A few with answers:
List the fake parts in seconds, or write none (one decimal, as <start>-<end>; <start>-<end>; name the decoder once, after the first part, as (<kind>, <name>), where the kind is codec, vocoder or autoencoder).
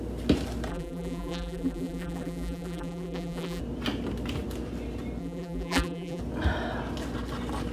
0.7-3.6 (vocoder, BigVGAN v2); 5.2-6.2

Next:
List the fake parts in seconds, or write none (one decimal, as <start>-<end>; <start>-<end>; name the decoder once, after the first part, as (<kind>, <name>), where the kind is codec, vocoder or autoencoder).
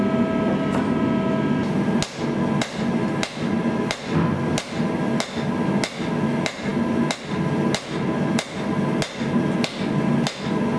none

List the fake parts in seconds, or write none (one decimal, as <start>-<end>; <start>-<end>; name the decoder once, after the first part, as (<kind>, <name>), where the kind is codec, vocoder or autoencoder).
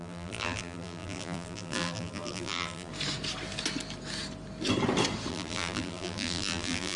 0.0-2.9 (vocoder, BigVGAN v2); 5.3-7.0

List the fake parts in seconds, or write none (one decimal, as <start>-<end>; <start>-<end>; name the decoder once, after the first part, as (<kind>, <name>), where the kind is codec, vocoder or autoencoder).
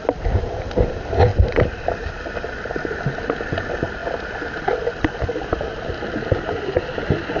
none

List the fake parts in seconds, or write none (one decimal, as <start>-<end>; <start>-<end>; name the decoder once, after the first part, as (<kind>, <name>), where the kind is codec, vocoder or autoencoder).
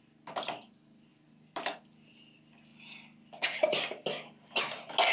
none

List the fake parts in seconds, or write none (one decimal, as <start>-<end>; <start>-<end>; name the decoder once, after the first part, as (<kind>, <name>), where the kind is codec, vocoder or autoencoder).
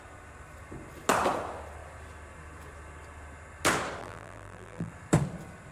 4.0-4.9 (vocoder, BigVGAN v2)